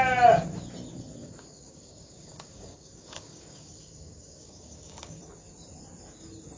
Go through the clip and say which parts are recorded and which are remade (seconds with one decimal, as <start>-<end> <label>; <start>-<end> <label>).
0.0-1.2 recorded; 1.2-5.2 remade; 5.2-6.6 recorded